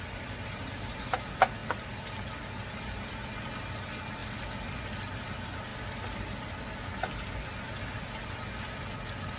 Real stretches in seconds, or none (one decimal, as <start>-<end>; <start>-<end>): 0.0-9.4